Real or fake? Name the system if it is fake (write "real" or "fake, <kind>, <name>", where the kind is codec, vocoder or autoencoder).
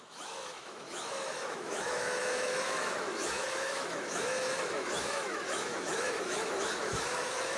fake, autoencoder, DAC-VAE